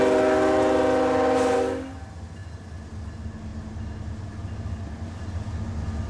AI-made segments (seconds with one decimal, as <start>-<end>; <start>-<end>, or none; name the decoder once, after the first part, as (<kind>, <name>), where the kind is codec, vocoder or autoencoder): none